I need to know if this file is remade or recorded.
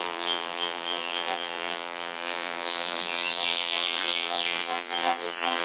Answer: remade